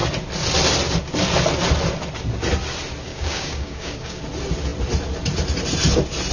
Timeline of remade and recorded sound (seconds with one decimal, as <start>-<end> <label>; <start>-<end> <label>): 0.0-3.1 recorded; 3.1-4.2 remade; 4.2-6.3 recorded